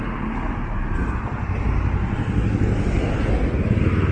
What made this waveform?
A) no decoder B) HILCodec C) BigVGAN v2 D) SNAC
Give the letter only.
A